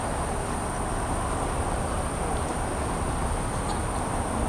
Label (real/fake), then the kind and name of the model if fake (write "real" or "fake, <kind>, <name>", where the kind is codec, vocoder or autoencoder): real